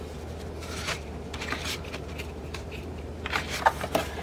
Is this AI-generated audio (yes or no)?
yes